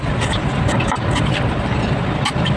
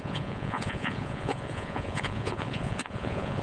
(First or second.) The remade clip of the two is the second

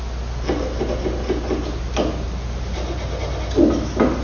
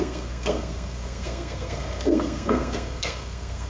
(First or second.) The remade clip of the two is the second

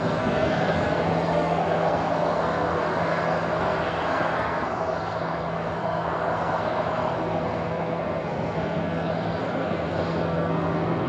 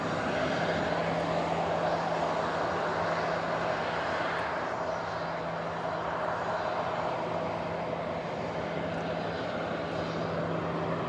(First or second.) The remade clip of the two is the first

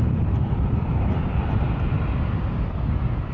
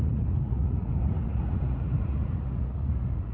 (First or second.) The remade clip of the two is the second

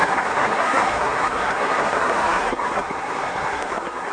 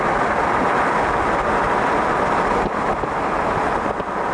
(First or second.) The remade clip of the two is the first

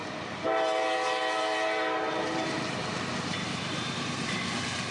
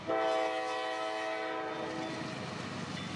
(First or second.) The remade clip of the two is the first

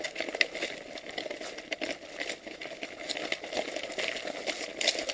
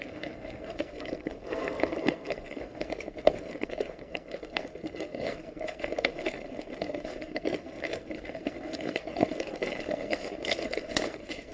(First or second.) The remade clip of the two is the second